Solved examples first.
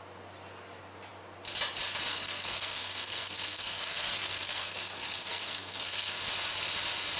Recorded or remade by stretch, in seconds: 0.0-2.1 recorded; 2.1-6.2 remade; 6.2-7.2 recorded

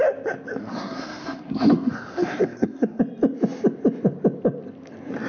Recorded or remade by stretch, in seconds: 0.0-0.6 recorded; 0.6-3.0 remade; 3.0-5.3 recorded

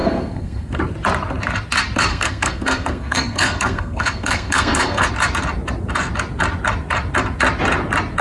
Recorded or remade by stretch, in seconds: 0.0-0.8 remade; 0.8-2.1 recorded; 2.1-5.1 remade; 5.1-8.2 recorded

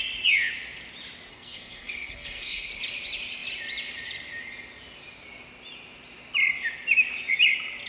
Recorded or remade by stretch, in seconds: 0.0-1.3 recorded; 1.3-2.7 remade; 2.7-7.9 recorded

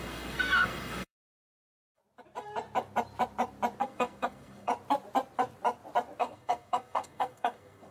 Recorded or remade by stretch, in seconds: 0.0-2.0 remade; 2.0-3.8 recorded; 3.8-4.7 remade; 4.7-6.2 recorded; 6.2-7.9 remade

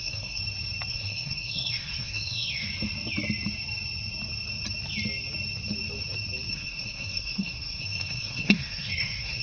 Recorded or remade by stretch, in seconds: 0.0-0.4 remade; 0.4-0.9 recorded; 0.9-2.7 remade; 2.7-6.5 recorded; 6.5-9.4 remade

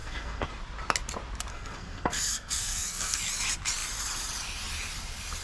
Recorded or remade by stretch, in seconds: 0.0-0.5 remade; 0.5-1.5 recorded; 1.5-3.2 remade; 3.2-5.4 recorded